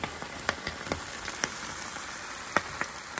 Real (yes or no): yes